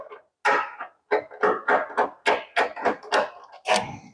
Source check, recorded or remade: recorded